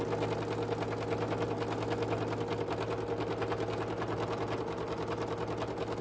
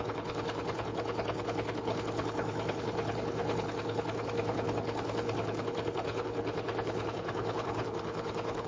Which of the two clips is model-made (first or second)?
second